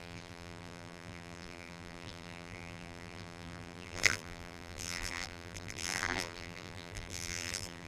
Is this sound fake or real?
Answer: fake